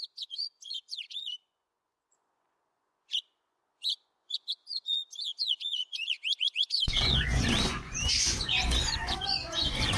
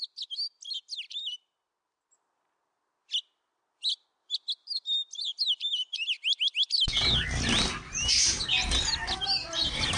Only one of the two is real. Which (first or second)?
second